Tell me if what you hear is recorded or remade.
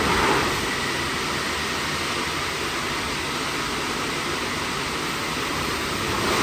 recorded